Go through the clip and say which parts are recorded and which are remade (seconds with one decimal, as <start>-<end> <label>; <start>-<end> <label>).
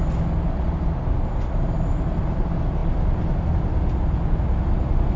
0.0-5.2 recorded